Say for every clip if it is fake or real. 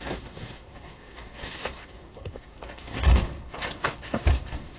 fake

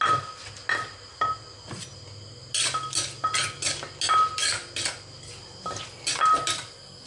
real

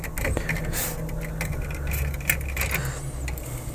real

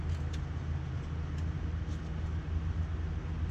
real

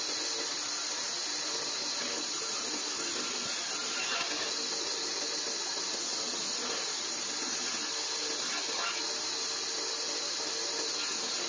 real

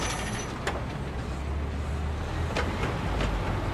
real